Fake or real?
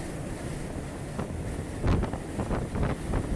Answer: real